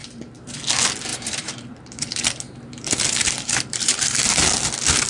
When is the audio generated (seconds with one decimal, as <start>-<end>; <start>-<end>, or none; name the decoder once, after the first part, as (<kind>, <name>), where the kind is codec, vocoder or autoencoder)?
0.0-0.6 (vocoder, BigVGAN v2); 1.1-4.2